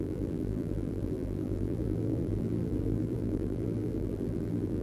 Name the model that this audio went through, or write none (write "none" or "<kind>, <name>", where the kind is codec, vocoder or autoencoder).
vocoder, BigVGAN v2